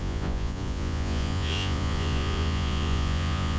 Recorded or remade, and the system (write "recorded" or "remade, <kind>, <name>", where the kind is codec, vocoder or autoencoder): remade, vocoder, Vocos